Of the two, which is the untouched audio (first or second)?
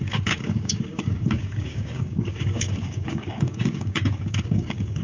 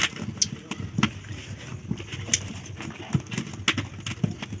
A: second